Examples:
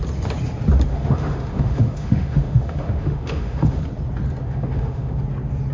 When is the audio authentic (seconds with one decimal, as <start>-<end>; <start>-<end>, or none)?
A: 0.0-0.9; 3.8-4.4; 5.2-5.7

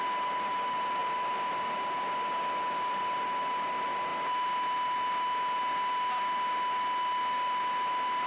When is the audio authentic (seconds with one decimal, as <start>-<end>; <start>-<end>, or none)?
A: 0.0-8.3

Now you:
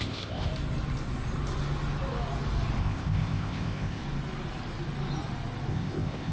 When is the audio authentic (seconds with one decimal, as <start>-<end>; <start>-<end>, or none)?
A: 0.5-2.8; 4.0-5.7

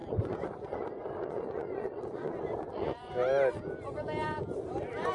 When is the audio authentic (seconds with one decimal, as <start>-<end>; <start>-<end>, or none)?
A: 3.1-5.1

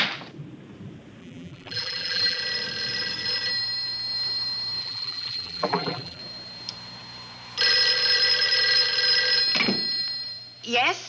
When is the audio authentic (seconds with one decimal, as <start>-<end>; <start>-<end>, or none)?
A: 0.0-1.2; 2.4-4.8; 6.2-11.1